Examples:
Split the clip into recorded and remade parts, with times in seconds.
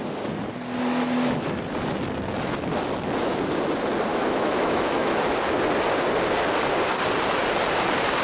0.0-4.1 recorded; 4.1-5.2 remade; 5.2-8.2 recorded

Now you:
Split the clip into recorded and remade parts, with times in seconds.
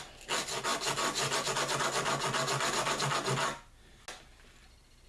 0.0-5.1 recorded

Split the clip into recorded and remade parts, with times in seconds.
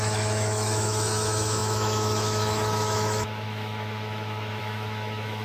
0.0-5.4 remade